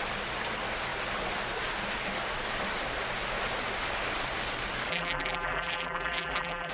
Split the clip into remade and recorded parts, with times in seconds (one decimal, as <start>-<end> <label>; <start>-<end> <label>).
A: 0.0-4.9 recorded; 4.9-6.7 remade